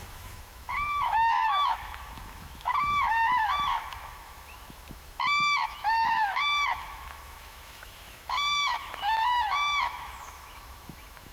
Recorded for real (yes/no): no